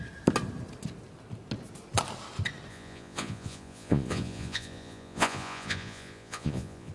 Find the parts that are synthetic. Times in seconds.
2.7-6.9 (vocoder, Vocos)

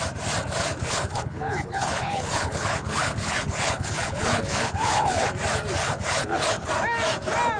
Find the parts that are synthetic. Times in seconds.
0.7-5.3 (codec, HILCodec); 5.8-6.7

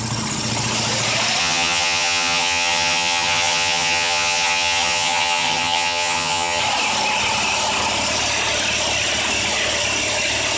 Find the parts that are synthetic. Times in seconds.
1.4-6.6 (vocoder, HiFi-GAN)

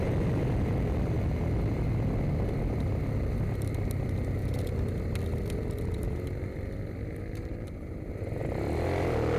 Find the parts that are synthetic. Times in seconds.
none

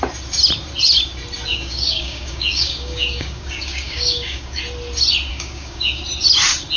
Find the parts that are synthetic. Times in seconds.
1.5-4.6 (codec, DAC); 5.3-6.0